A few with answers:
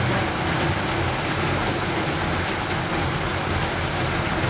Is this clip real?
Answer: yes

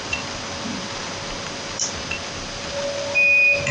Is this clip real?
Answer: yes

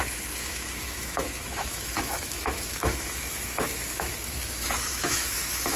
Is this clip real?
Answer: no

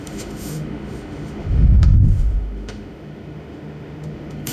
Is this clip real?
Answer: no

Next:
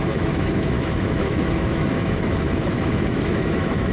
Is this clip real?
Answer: no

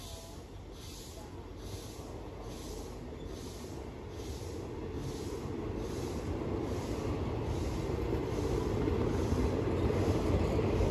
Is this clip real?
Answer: yes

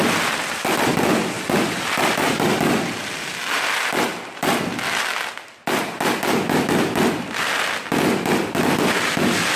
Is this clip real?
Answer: yes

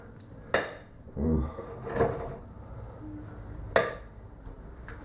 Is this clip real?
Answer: yes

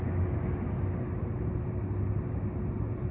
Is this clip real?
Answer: yes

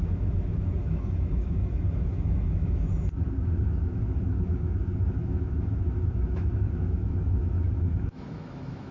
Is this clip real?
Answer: no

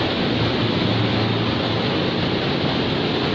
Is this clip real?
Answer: yes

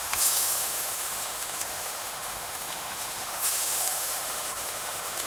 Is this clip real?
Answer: no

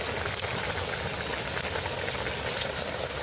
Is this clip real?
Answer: yes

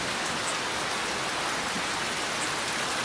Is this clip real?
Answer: yes